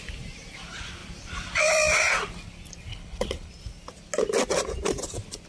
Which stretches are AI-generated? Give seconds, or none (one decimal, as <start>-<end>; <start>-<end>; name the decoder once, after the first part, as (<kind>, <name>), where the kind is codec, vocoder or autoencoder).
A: 2.9-3.5 (codec, HILCodec)